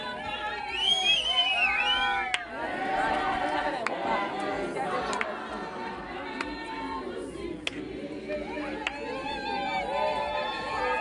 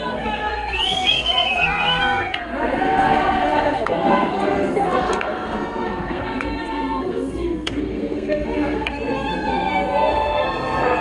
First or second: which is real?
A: first